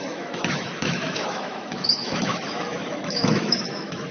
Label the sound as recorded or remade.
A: remade